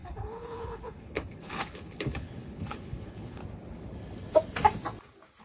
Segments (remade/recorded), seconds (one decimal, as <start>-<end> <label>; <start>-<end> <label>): 0.0-3.4 remade; 3.4-5.4 recorded